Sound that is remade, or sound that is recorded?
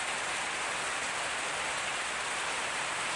recorded